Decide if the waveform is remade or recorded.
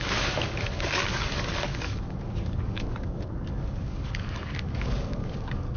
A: remade